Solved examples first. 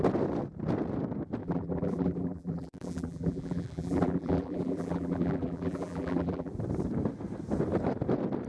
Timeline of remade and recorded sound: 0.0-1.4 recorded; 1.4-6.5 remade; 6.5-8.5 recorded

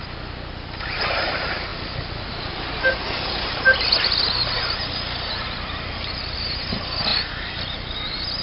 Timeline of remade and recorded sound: 0.0-8.4 recorded

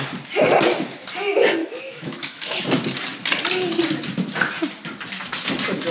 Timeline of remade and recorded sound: 0.0-1.6 recorded; 1.6-2.6 remade; 2.6-5.9 recorded